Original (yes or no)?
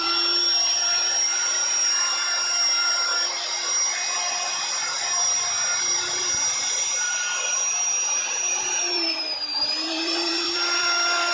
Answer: no